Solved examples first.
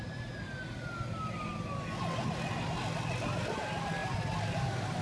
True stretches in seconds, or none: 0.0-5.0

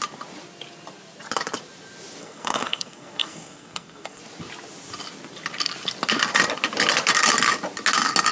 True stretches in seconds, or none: 0.0-2.2; 4.2-8.3

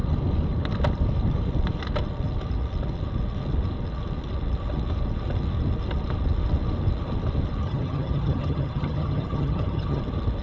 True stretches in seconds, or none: 0.0-7.6; 10.0-10.4

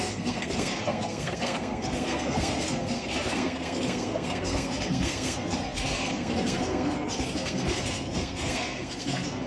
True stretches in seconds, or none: none